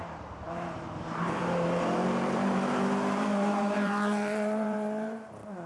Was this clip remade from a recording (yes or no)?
yes